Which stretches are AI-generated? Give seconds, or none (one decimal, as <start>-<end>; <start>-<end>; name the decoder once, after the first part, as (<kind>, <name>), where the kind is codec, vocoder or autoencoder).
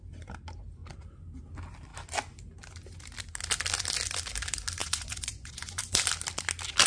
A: 4.8-5.8 (vocoder, Vocos)